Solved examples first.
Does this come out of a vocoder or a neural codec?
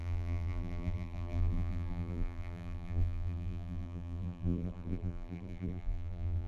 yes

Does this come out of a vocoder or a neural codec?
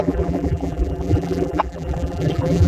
yes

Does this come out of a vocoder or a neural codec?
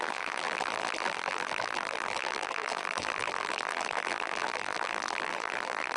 yes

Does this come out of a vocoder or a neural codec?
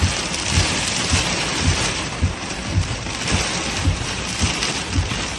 yes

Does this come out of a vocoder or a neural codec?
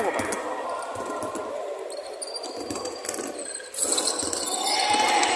no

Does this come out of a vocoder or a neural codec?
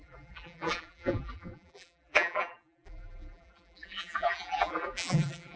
yes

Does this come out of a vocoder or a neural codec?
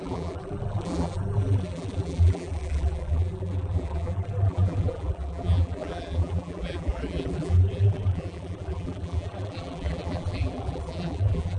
yes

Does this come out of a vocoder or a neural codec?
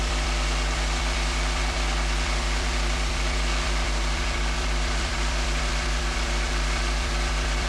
yes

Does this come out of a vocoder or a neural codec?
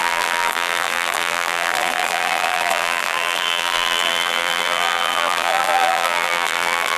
yes